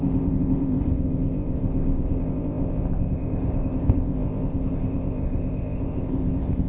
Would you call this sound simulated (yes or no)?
yes